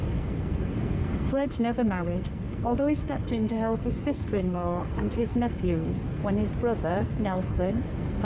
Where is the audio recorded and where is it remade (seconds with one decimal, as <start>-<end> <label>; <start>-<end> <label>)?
0.0-6.2 remade; 6.2-6.9 recorded; 6.9-8.2 remade